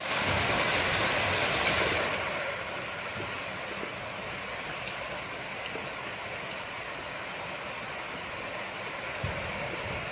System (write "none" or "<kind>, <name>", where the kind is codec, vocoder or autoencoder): none